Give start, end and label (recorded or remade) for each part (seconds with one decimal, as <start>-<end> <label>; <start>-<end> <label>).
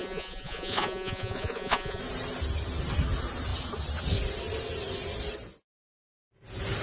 0.0-2.0 remade; 2.0-6.8 recorded